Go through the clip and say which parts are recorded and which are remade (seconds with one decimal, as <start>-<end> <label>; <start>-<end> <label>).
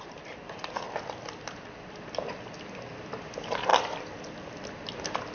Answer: 0.0-5.3 recorded